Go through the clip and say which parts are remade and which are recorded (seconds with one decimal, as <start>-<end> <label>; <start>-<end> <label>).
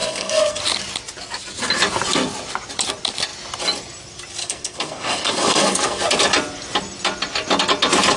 0.0-0.6 remade; 0.6-4.4 recorded; 4.4-6.0 remade; 6.0-8.2 recorded